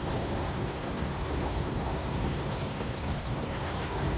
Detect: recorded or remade remade